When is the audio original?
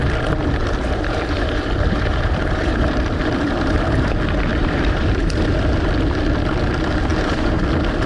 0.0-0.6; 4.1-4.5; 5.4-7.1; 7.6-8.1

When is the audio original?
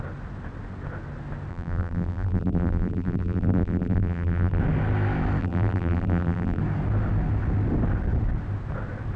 0.0-1.5; 4.6-5.4; 6.6-9.2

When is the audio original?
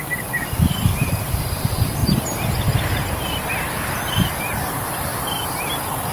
2.0-3.5; 5.1-6.1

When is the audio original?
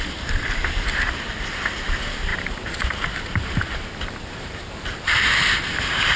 0.0-2.3; 5.3-6.2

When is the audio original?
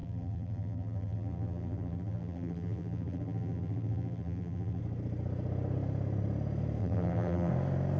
4.8-6.8; 7.5-8.0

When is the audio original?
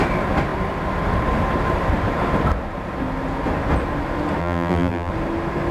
0.0-4.4; 5.1-5.7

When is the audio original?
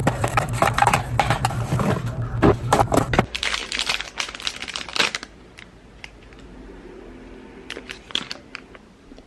3.6-4.5; 4.9-6.7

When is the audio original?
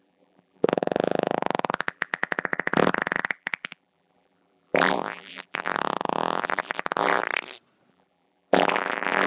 7.2-7.9